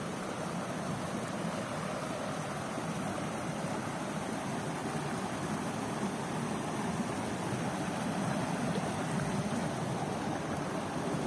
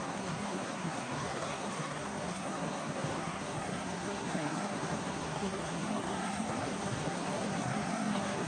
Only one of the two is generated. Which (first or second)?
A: second